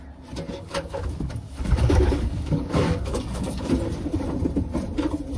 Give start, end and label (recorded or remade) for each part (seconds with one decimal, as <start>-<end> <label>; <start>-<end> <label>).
0.0-0.5 recorded; 0.5-3.7 remade; 3.7-5.4 recorded